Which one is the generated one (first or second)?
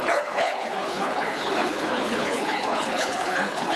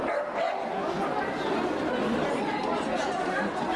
first